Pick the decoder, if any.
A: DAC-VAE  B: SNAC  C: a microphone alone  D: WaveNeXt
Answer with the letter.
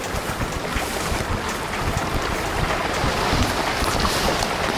C